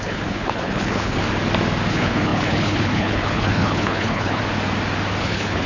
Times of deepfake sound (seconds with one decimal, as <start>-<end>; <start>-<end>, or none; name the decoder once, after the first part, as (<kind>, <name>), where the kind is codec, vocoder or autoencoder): 0.0-1.2 (codec, HILCodec); 1.9-4.4; 5.2-5.7